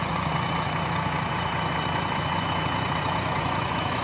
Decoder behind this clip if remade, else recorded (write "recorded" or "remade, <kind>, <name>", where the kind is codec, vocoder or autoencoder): remade, vocoder, Vocos